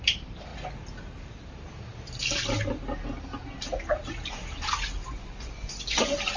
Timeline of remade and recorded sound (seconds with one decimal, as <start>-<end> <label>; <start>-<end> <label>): 0.0-5.0 recorded; 5.0-6.0 remade; 6.0-6.4 recorded